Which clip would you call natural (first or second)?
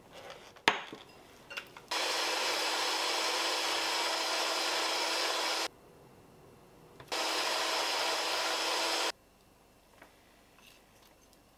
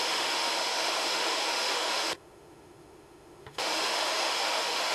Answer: first